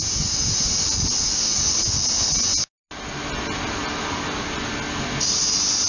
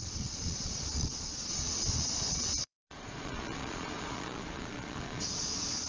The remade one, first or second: second